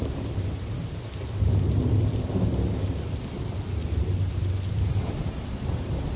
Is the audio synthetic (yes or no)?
no